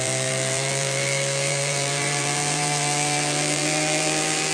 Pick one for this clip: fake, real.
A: fake